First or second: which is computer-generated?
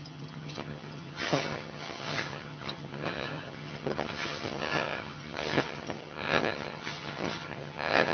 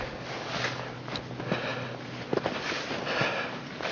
first